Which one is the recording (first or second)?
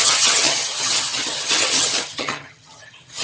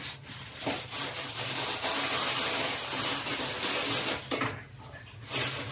second